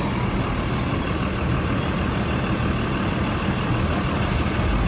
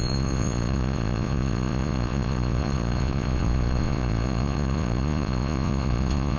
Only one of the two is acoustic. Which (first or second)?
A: first